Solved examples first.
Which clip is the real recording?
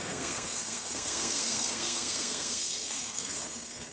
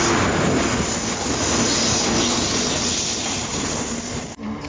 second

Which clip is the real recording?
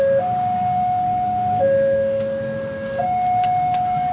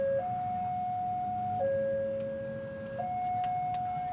second